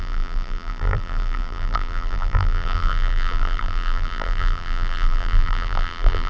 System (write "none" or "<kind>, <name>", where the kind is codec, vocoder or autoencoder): vocoder, BigVGAN v2